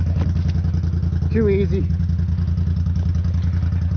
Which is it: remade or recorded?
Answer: recorded